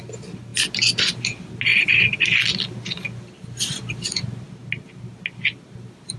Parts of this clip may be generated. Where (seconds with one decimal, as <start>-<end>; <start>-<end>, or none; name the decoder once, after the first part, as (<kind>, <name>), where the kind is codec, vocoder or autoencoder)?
none